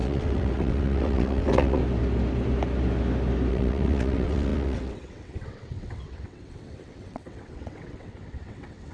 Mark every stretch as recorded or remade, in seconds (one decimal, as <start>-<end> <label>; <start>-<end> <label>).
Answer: 0.0-1.8 remade; 1.8-3.5 recorded; 3.5-8.9 remade